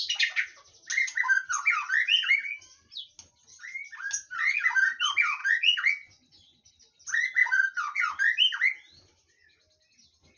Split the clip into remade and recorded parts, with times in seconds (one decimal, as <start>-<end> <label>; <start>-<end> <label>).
0.0-5.4 recorded; 5.4-6.7 remade; 6.7-7.4 recorded; 7.4-8.1 remade; 8.1-10.4 recorded